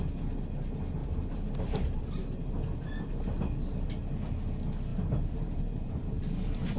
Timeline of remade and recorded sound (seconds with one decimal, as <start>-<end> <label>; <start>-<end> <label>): 0.0-1.0 recorded; 1.0-2.5 remade; 2.5-4.9 recorded; 4.9-6.8 remade

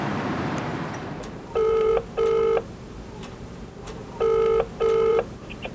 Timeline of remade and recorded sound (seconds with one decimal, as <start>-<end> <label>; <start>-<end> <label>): 0.0-1.9 remade; 1.9-3.2 recorded; 3.2-4.0 remade; 4.0-5.1 recorded; 5.1-5.7 remade

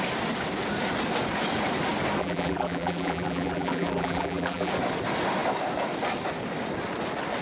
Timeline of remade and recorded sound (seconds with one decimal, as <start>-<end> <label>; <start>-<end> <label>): 0.0-2.2 recorded; 2.2-4.7 remade; 4.7-7.4 recorded

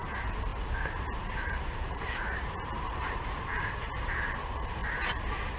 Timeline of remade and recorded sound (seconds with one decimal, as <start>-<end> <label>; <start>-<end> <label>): 0.0-4.8 remade; 4.8-5.6 recorded

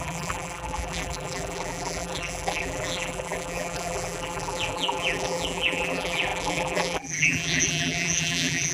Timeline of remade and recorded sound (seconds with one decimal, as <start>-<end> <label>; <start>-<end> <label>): 0.0-8.7 remade